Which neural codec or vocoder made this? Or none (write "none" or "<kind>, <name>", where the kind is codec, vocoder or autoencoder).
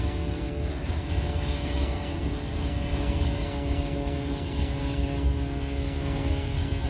codec, SNAC